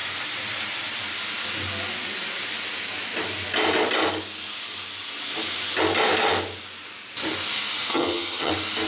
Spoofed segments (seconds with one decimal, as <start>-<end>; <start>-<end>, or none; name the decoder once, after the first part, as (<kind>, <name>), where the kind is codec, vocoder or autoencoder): 7.9-8.5 (vocoder, HiFi-GAN)